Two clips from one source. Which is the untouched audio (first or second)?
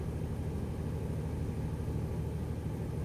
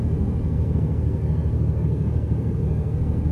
first